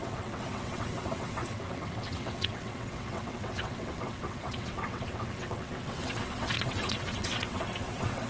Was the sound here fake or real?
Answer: fake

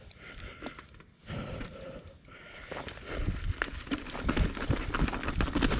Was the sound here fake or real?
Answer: real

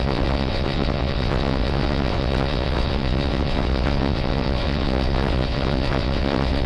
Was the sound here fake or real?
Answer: fake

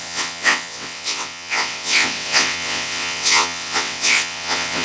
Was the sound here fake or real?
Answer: fake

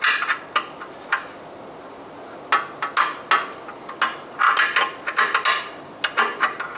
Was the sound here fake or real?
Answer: real